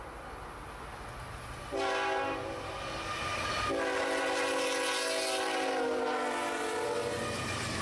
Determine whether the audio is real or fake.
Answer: real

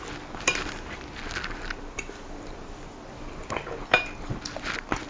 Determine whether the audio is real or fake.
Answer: real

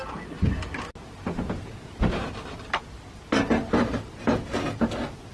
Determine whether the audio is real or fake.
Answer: real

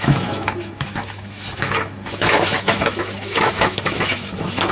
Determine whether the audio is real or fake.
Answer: fake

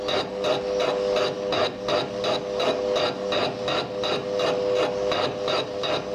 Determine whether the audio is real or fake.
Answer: real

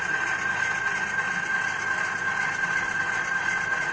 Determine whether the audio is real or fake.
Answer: real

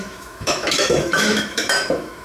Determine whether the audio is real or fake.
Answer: fake